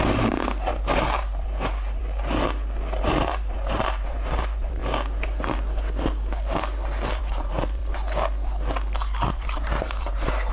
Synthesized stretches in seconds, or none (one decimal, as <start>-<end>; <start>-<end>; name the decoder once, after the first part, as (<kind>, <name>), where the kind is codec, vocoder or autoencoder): 0.0-2.0 (vocoder, BigVGAN v2); 3.0-4.8; 7.2-7.8; 9.3-10.5